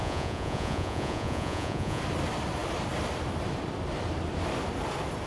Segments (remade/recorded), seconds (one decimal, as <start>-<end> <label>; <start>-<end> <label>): 0.0-2.0 remade; 2.0-5.3 recorded